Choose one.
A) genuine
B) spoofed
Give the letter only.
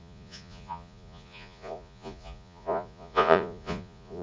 B